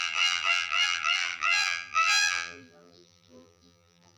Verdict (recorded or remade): remade